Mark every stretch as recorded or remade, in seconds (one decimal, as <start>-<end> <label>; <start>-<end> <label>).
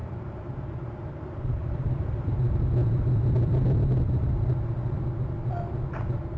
0.0-2.3 remade; 2.3-6.4 recorded